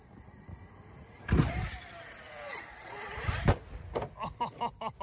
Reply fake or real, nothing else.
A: real